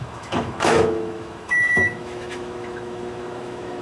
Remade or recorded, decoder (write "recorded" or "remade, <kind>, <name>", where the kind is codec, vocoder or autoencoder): remade, autoencoder, DAC-VAE